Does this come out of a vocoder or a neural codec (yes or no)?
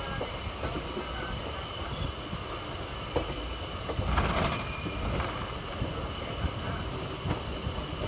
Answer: no